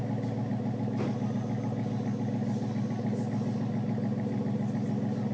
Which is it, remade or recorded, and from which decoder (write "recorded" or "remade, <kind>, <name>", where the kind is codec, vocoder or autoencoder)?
recorded